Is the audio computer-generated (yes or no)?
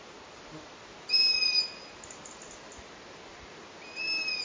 no